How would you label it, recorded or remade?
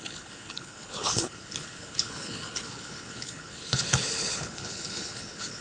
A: remade